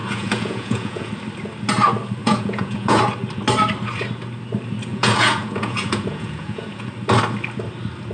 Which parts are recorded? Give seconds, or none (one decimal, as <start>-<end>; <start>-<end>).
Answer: 1.1-2.2; 3.0-4.9; 6.9-8.1